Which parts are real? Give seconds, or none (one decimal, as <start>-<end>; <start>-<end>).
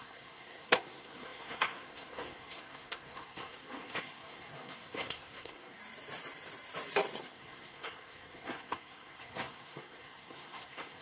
5.8-7.2